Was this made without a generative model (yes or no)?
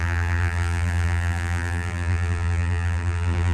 no